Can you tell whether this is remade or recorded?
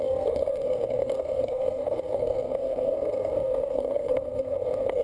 remade